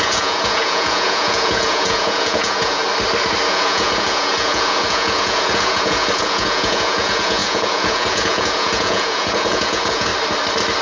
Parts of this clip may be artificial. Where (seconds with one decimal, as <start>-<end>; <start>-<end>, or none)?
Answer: 0.0-2.8; 3.5-10.1